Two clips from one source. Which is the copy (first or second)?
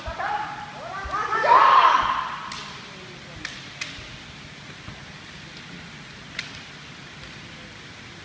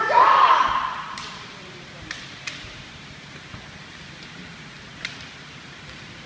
second